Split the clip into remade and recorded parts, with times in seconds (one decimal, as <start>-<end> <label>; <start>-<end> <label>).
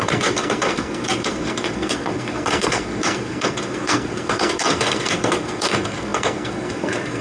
0.0-7.2 remade